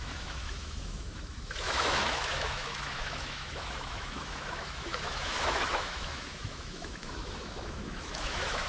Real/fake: fake